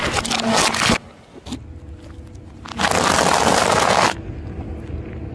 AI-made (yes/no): no